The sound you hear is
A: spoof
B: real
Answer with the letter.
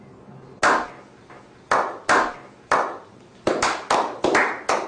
B